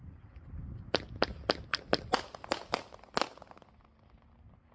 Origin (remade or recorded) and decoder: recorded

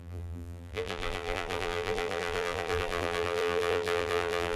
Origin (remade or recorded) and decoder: remade, vocoder, BigVGAN v2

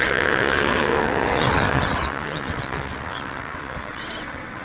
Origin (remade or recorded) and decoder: remade, vocoder, WaveNeXt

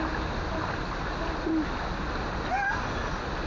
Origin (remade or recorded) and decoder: recorded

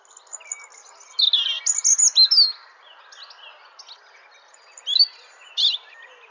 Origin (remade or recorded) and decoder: recorded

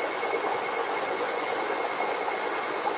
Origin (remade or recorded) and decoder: remade, vocoder, Vocos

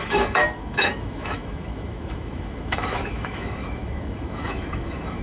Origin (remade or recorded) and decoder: remade, autoencoder, DAC-VAE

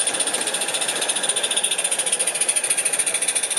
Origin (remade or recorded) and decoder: recorded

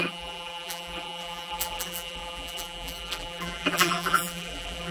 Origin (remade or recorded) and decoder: remade, vocoder, BigVGAN v2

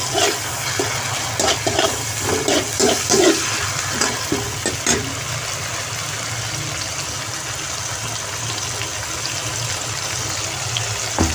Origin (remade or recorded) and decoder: recorded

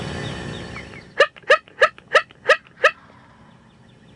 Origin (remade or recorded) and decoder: recorded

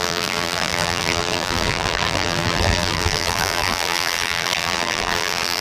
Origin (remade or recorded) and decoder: remade, vocoder, BigVGAN v2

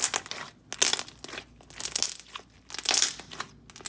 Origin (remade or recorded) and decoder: recorded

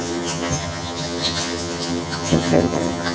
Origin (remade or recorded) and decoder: remade, vocoder, HiFi-GAN